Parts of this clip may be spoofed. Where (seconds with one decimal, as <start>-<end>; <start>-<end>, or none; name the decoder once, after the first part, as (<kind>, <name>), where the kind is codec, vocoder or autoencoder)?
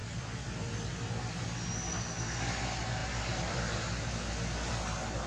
none